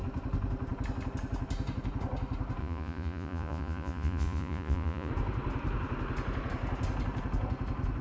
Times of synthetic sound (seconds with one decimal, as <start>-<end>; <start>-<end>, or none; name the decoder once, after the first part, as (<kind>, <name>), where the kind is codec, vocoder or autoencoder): 2.6-5.1 (vocoder, Vocos)